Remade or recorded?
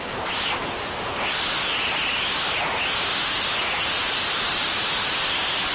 recorded